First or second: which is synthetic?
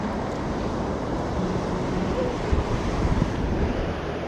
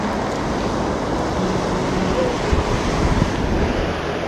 first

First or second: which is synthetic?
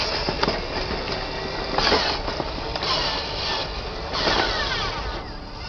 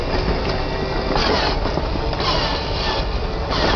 first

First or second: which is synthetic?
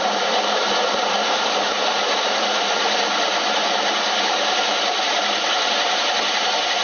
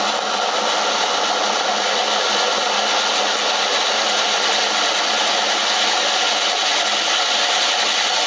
first